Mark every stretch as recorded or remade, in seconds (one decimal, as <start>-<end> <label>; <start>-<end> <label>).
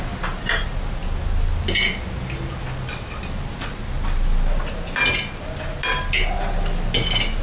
0.0-7.4 recorded